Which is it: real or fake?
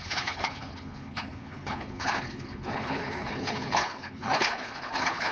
fake